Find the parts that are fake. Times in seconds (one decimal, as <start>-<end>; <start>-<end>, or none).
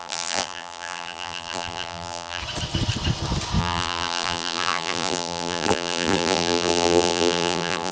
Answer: 0.0-2.4; 3.6-7.9